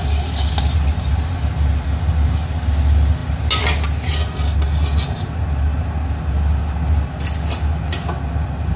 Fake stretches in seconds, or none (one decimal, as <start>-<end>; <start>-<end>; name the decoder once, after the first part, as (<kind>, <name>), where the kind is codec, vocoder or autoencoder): none